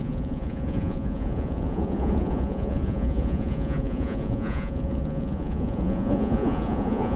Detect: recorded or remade remade